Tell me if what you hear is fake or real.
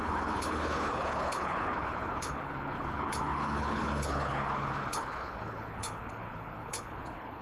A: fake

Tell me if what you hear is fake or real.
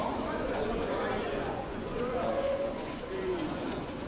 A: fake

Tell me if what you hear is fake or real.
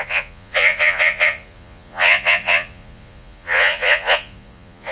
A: fake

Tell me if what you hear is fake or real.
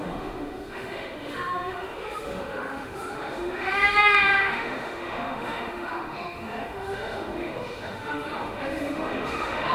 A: fake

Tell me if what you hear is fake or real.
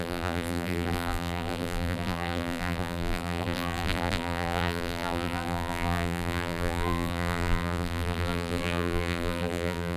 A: fake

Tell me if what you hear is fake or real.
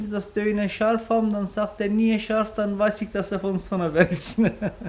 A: real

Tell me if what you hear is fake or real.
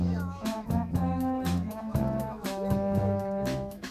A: fake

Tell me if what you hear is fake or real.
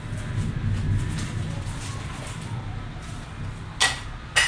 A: real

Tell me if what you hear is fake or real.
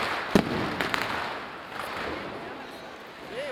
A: real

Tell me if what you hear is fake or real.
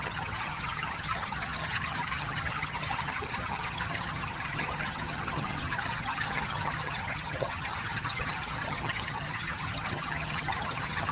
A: fake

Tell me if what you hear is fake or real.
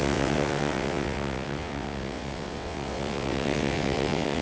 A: fake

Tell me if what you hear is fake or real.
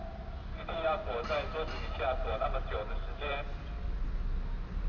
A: real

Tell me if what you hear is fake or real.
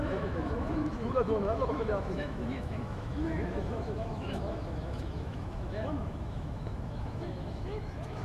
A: fake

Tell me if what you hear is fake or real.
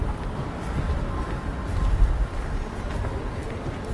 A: real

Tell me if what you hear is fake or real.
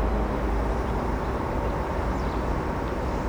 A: real